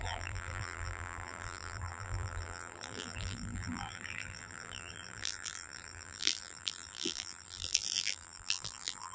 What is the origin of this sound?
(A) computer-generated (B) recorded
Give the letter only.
A